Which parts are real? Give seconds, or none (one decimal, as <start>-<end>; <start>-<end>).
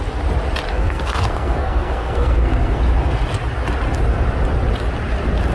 0.0-0.7; 2.8-5.5